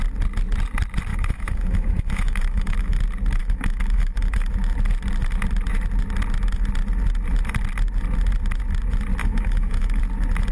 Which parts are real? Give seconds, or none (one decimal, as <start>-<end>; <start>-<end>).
0.0-1.1; 3.0-3.4; 4.5-9.2; 10.0-10.5